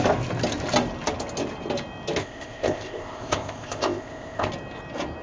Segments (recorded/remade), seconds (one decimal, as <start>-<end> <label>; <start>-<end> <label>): 0.0-2.2 recorded; 2.2-4.5 remade; 4.5-5.2 recorded